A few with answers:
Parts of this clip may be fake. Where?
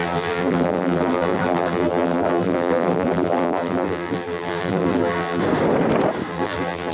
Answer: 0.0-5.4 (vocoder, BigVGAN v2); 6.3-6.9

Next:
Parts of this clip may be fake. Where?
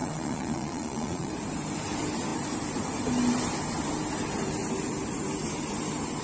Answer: 0.0-1.3 (vocoder, Vocos)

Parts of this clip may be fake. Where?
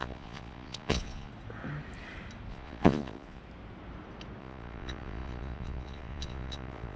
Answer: 0.0-1.3 (vocoder, Vocos); 2.5-3.4; 4.4-7.0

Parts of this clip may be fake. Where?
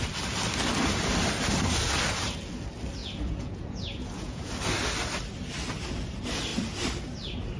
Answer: 3.0-4.5 (vocoder, Vocos)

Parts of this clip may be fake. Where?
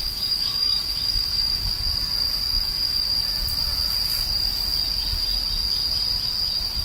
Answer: 0.0-1.7 (autoencoder, DAC-VAE); 2.6-3.1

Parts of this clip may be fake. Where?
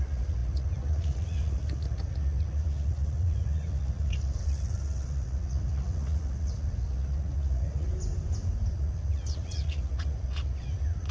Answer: 0.0-7.9 (vocoder, Vocos); 8.7-11.1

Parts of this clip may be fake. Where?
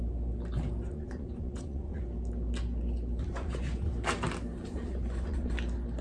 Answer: 0.9-2.0 (vocoder, Vocos); 3.3-3.9; 4.6-5.5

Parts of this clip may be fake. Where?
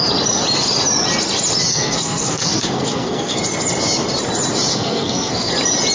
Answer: 1.7-3.4 (codec, SNAC); 4.7-5.5